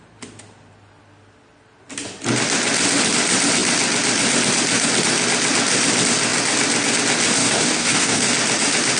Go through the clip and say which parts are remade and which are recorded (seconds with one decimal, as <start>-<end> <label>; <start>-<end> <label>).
0.0-7.4 recorded; 7.4-8.2 remade; 8.2-9.0 recorded